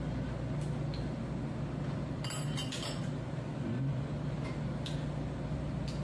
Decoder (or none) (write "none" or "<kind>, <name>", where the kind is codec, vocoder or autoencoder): none